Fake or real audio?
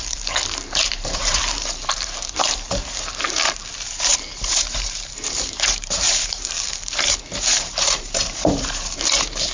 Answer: fake